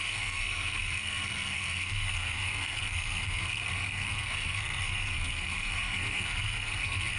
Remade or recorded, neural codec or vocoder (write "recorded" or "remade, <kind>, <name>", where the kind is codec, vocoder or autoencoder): remade, codec, SNAC